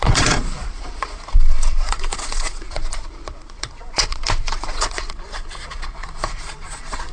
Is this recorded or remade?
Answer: remade